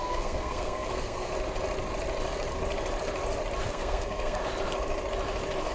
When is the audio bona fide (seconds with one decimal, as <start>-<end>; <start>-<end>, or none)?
1.3-3.6; 4.4-5.7